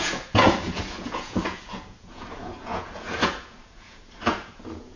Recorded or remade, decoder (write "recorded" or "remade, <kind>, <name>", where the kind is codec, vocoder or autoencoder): remade, vocoder, Vocos